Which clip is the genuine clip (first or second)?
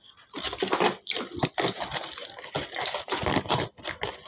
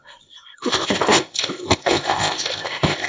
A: first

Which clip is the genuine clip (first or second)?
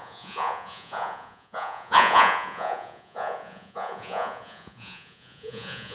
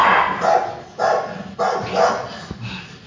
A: second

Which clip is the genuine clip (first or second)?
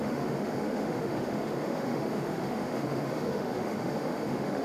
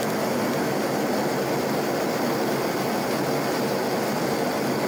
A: second